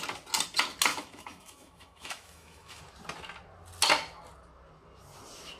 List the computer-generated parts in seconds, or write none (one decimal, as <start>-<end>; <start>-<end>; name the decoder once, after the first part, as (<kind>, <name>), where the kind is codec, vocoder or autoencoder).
0.9-2.8 (autoencoder, DAC-VAE)